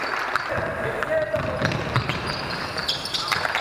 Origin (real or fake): real